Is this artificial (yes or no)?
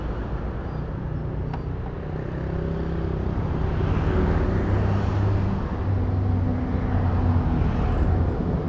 no